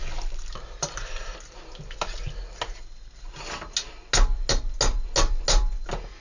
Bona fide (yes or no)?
yes